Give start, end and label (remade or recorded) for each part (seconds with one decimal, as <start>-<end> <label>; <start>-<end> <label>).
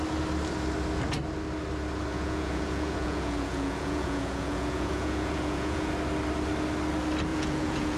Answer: 0.0-2.1 recorded; 2.1-5.9 remade; 5.9-7.3 recorded; 7.3-8.0 remade